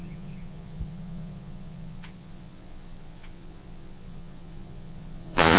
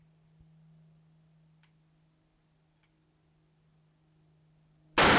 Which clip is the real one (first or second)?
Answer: second